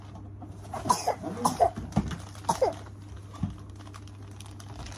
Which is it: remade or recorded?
recorded